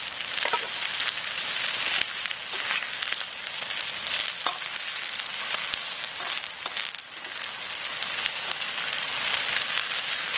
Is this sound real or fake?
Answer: real